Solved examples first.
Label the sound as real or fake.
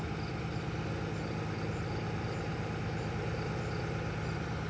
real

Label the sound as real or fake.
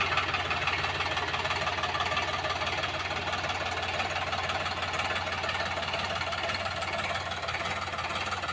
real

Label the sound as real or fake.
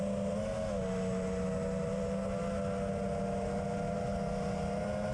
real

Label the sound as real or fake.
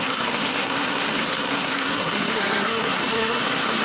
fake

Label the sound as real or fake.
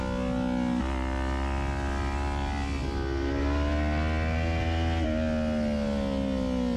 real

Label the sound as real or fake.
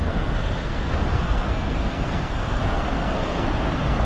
fake